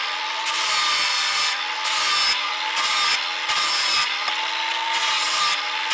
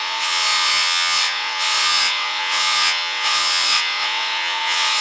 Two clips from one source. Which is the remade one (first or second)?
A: second